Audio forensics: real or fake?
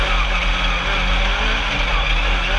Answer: real